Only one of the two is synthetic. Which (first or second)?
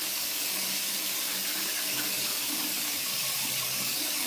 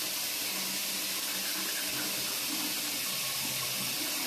first